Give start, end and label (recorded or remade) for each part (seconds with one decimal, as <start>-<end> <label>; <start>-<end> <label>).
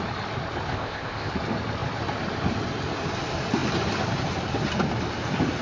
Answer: 0.0-0.7 recorded; 0.7-1.3 remade; 1.3-5.6 recorded